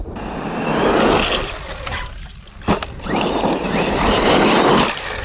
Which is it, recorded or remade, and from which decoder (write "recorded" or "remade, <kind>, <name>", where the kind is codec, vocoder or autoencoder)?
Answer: recorded